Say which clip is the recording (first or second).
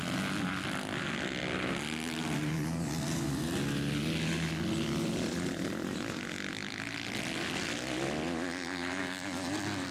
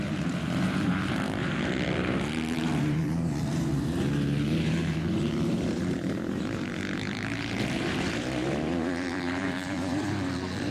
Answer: first